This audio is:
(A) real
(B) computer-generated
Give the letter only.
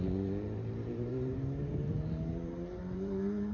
B